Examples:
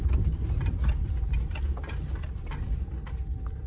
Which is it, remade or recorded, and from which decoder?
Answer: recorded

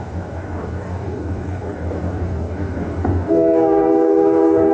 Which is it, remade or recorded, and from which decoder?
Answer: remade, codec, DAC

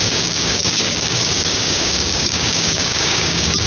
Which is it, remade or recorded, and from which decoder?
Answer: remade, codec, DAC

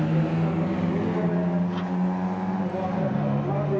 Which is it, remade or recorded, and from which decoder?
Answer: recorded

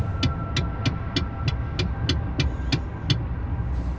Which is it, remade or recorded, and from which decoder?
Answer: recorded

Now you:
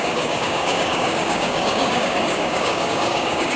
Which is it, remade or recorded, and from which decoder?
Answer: remade, codec, DAC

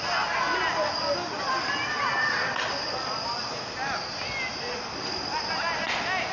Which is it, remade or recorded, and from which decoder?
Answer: recorded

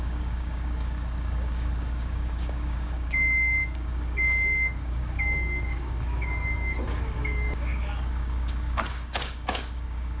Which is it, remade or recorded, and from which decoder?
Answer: remade, codec, DAC